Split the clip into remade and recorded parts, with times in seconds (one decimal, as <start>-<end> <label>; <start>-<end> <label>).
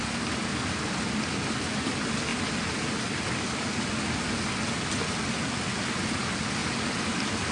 0.0-7.5 recorded